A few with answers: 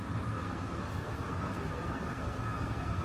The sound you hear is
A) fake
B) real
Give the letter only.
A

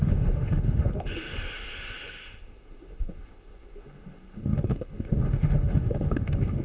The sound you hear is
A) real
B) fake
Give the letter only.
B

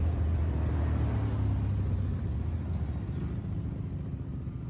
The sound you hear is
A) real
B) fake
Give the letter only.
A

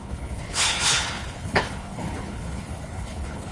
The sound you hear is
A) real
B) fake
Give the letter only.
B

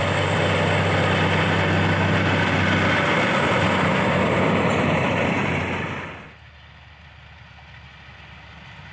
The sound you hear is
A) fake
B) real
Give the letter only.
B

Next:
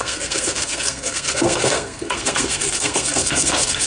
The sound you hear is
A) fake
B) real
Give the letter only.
A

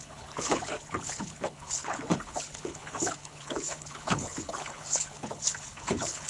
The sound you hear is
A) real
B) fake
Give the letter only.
B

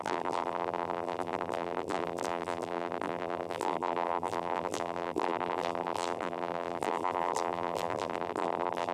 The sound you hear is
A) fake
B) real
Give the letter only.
A